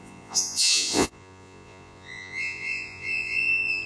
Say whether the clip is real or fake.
fake